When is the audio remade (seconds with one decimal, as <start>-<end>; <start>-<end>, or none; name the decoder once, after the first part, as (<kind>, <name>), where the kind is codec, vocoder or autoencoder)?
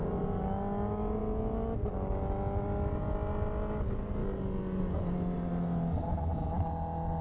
none